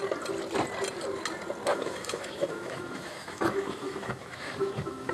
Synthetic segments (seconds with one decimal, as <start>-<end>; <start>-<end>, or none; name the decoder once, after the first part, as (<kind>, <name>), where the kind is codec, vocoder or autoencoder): 1.7-5.1 (autoencoder, DAC-VAE)